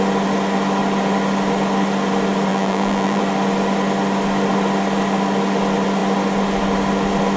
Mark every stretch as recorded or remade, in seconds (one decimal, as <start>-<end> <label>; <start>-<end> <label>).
0.0-2.5 recorded; 2.5-3.2 remade; 3.2-7.4 recorded